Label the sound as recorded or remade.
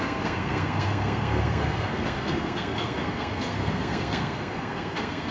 remade